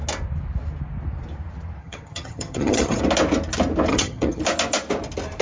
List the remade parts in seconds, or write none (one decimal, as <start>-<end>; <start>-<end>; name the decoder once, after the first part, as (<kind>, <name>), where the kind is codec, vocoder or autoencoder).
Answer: 1.8-3.0 (vocoder, HiFi-GAN); 3.9-4.4